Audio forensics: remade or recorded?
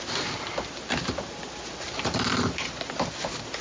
recorded